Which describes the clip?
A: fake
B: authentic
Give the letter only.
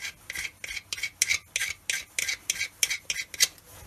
B